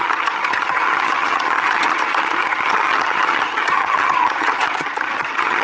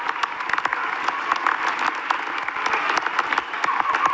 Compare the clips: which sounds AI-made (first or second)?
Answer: first